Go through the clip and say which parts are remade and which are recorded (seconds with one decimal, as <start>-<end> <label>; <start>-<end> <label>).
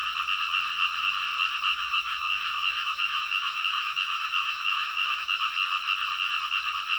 0.0-1.7 recorded; 1.7-5.5 remade; 5.5-7.0 recorded